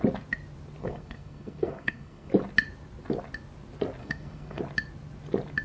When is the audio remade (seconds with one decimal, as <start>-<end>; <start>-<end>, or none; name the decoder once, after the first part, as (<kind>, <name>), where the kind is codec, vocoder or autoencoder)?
0.8-2.3 (codec, SNAC); 4.0-4.6